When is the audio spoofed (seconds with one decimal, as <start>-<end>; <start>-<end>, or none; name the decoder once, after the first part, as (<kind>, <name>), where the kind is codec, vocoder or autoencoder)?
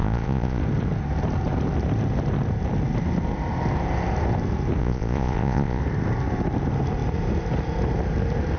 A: 0.0-0.6 (vocoder, Vocos); 4.8-5.8